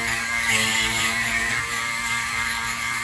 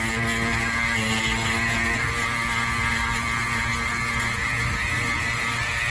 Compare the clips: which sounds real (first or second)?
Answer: second